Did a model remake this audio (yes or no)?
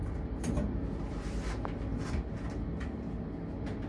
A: no